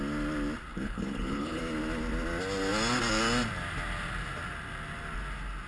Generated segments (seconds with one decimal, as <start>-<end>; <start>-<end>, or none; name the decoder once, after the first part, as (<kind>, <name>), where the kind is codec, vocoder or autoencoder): 0.7-1.6 (codec, HILCodec)